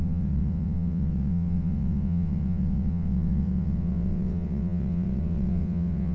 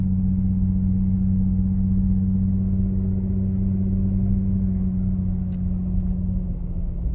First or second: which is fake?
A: first